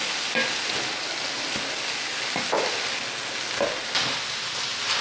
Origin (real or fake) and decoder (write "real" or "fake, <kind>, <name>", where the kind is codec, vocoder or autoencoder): real